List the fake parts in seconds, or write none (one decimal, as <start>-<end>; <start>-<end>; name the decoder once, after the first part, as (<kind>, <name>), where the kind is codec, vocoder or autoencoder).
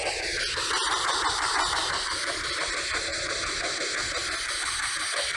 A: 0.0-2.6 (vocoder, BigVGAN v2)